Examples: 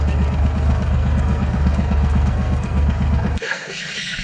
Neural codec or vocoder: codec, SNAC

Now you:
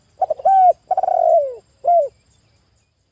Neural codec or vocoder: none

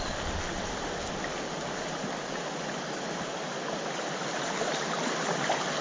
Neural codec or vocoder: none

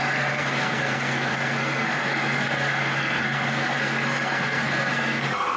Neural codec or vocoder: codec, SNAC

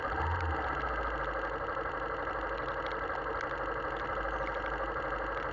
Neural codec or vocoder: none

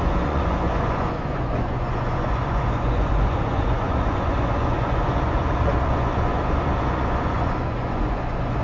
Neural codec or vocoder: vocoder, Vocos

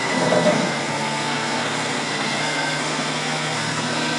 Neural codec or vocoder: codec, SNAC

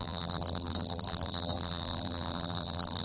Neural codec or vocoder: vocoder, BigVGAN v2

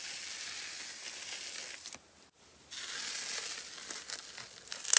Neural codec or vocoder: none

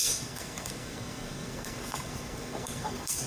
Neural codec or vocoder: codec, SNAC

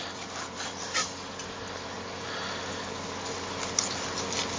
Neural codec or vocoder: none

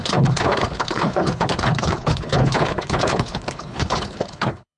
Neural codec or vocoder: codec, HILCodec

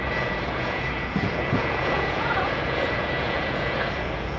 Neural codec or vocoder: vocoder, Vocos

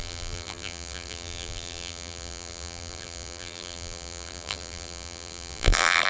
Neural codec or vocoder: vocoder, BigVGAN v2